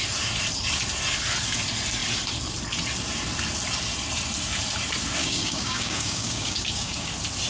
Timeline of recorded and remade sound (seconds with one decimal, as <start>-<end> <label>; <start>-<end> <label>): 0.0-5.2 recorded; 5.2-7.1 remade; 7.1-7.5 recorded